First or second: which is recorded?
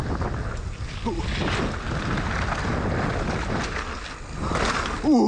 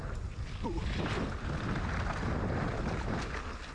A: first